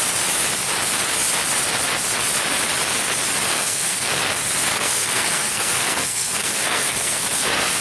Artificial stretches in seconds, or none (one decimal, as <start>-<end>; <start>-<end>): 3.5-4.2; 4.7-7.8